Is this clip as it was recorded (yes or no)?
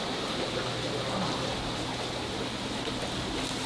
yes